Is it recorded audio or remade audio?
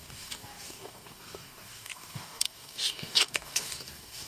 remade